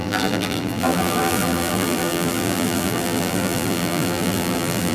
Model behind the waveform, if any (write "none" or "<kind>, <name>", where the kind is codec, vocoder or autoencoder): vocoder, BigVGAN v2